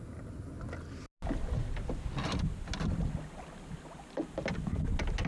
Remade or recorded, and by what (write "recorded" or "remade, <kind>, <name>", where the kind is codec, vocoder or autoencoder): recorded